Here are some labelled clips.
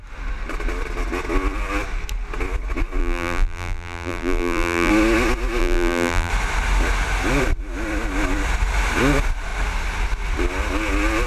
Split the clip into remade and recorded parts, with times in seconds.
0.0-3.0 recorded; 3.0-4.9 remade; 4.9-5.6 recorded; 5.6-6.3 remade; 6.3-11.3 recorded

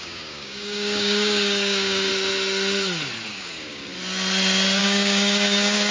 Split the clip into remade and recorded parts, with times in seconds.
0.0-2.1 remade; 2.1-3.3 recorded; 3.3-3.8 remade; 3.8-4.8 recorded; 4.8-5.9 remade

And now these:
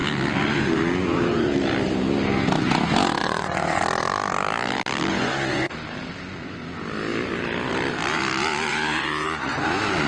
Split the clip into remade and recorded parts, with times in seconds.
0.0-3.2 recorded; 3.2-3.8 remade; 3.8-5.1 recorded; 5.1-5.7 remade; 5.7-8.7 recorded; 8.7-10.1 remade